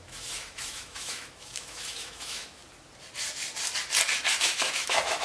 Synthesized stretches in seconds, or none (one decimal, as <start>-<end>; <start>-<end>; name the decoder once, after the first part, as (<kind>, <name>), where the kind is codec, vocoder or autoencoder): 0.0-2.6 (autoencoder, DAC-VAE); 4.3-5.2

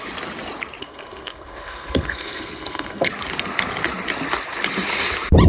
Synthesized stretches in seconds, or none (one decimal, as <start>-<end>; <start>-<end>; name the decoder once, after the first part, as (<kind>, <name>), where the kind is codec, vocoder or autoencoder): 0.8-3.1 (codec, SNAC)

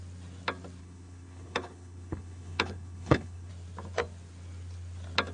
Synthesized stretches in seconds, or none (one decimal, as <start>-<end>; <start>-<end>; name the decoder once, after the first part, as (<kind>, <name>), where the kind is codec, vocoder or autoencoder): 0.8-3.5 (codec, HILCodec)